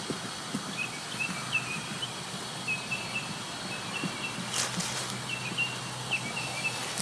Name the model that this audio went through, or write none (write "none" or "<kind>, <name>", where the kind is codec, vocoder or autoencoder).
none